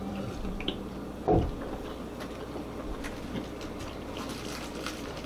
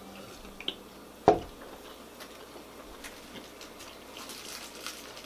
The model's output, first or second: first